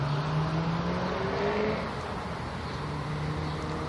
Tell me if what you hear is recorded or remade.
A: recorded